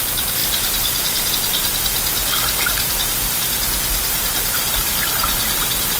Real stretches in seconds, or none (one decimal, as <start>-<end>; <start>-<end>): 0.0-0.4; 1.3-6.0